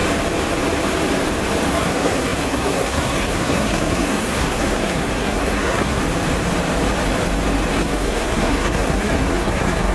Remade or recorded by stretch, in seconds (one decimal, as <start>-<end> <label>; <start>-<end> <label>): 0.0-1.7 recorded; 1.7-6.0 remade; 6.0-7.7 recorded; 7.7-9.9 remade